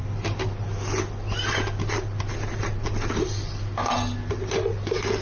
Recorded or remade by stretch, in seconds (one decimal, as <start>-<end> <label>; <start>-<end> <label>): 0.0-5.2 recorded